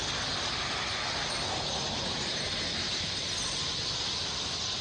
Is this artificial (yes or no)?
no